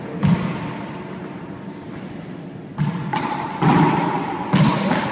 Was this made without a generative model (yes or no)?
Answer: yes